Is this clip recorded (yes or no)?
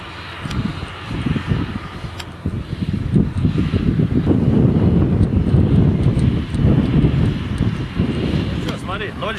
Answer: yes